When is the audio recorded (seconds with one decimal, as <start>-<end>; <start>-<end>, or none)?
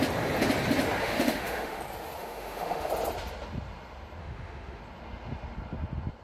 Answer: 0.0-1.0; 1.8-2.2; 2.9-4.2; 4.8-6.2